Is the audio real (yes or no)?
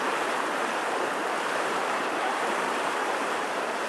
no